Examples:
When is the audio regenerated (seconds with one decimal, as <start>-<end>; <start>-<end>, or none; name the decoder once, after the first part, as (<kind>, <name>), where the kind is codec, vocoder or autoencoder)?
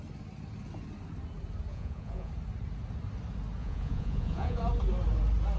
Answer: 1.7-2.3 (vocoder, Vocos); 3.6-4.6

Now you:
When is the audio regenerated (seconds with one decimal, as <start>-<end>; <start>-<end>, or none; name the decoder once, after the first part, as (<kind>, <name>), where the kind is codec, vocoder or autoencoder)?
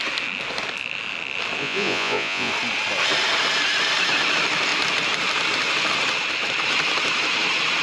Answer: 1.6-2.5 (vocoder, Vocos)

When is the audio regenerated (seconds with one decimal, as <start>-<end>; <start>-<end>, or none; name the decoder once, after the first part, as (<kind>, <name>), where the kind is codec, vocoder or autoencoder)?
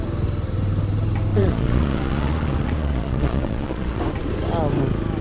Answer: 1.3-4.0 (vocoder, Vocos)